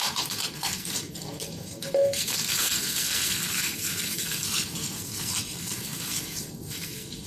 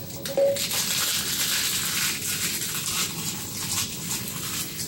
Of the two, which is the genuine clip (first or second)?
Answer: second